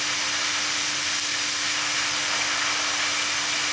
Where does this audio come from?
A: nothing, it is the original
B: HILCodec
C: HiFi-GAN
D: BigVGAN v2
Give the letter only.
A